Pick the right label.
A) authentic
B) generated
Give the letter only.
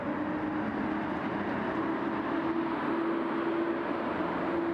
A